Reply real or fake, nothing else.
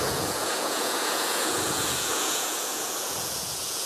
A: fake